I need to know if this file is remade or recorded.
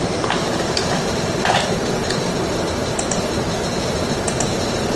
remade